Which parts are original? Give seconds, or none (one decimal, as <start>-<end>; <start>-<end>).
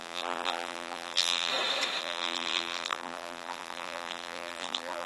1.5-2.0